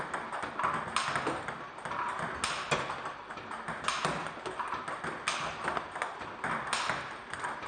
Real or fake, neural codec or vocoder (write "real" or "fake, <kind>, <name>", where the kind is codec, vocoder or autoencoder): real